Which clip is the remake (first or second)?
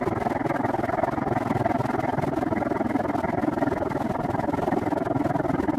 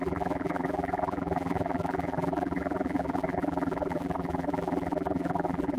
second